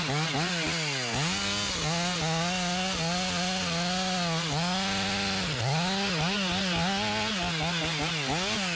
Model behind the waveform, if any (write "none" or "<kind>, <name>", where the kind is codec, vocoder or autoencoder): none